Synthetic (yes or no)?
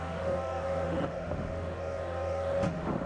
yes